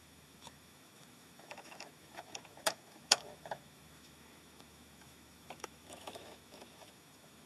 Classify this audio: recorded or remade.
remade